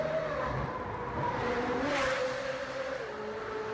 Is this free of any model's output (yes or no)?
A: yes